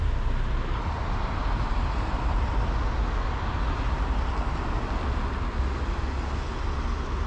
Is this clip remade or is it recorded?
recorded